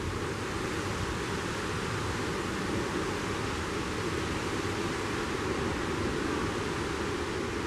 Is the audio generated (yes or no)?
no